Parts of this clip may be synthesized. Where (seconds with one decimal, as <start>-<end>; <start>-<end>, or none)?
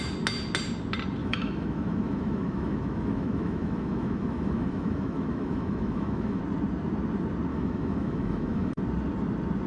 1.2-6.4; 7.5-8.8